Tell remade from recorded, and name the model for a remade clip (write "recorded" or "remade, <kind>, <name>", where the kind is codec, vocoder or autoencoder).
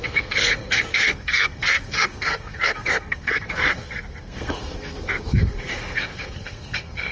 remade, codec, SNAC